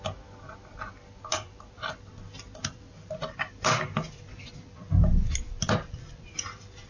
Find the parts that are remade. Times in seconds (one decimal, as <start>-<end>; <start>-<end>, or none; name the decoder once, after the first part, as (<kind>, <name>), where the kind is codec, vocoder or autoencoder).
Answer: 1.3-1.9 (vocoder, BigVGAN v2); 2.6-6.9